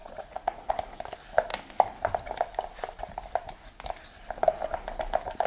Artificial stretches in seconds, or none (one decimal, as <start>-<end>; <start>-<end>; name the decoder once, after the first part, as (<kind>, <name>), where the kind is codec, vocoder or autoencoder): 0.0-0.7 (vocoder, Vocos)